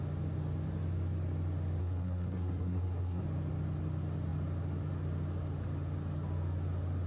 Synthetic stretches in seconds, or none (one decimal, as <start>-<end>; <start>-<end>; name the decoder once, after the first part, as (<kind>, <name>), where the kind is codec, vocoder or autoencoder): 1.8-3.2 (codec, SNAC)